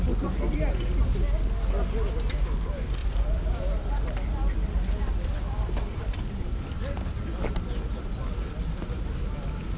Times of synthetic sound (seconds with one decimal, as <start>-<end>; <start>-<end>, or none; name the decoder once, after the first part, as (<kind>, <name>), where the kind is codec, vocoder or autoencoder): 3.0-7.8 (vocoder, BigVGAN v2)